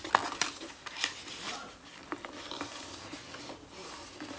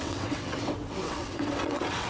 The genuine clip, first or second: first